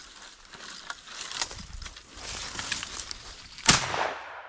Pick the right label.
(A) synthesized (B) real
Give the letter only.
B